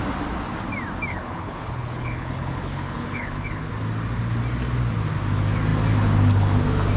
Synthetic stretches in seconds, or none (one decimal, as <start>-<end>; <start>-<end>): 1.1-3.7